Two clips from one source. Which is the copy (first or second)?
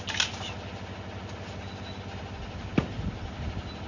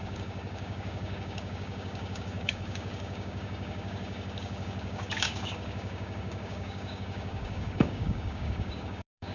second